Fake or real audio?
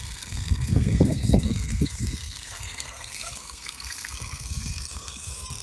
fake